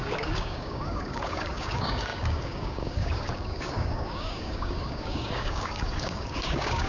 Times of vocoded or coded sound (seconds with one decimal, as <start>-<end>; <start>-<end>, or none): 0.0-6.9